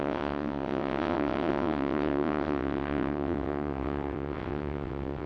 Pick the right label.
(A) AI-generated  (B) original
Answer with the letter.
A